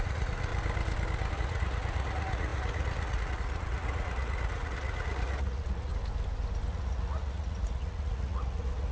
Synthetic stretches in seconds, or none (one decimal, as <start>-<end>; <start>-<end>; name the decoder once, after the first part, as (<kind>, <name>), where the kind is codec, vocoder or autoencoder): 0.0-0.5 (vocoder, Vocos); 1.3-5.9; 6.7-8.9